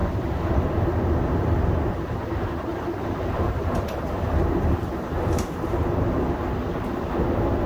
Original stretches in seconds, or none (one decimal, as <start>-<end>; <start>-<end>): 2.2-2.7; 7.1-7.7